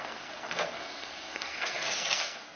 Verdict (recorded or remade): remade